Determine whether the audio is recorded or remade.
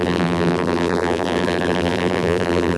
remade